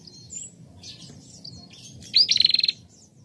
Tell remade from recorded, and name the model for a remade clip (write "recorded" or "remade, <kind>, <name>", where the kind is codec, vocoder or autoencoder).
recorded